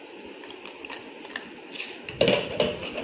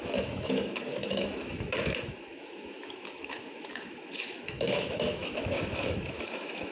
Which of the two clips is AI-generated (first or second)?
second